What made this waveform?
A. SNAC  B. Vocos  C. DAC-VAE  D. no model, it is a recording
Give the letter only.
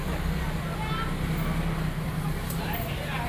D